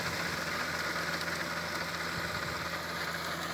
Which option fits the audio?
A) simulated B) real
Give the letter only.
B